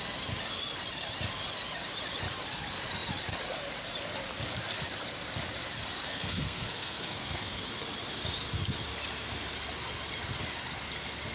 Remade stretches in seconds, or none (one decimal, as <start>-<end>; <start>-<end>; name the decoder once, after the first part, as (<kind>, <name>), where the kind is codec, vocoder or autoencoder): 6.1-7.7 (codec, SNAC)